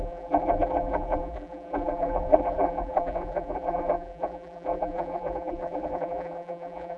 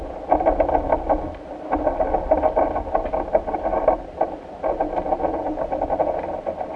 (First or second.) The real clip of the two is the second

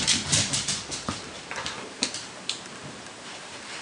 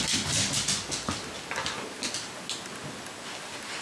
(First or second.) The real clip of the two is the second